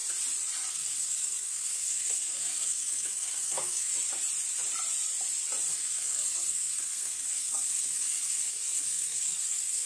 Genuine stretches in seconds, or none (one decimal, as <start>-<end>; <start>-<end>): 0.0-0.7; 3.9-5.7